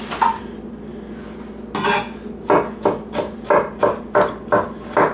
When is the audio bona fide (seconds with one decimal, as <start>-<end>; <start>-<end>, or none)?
0.0-5.1